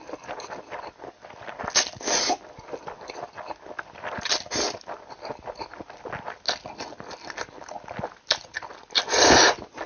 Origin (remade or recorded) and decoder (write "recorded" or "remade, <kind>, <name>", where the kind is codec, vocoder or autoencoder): recorded